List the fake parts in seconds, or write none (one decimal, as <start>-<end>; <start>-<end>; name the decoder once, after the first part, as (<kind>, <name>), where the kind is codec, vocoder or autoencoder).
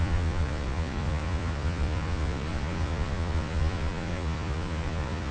0.0-5.3 (vocoder, Vocos)